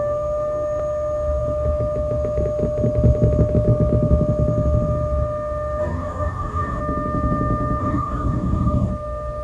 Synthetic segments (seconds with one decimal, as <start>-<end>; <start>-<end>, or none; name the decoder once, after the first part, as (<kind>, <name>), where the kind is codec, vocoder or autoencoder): 5.8-6.8 (codec, DAC); 7.8-8.9